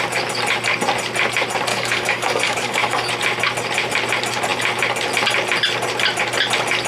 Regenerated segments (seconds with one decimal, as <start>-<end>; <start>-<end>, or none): 1.7-3.1